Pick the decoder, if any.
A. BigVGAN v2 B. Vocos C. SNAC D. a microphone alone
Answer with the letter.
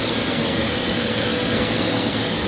C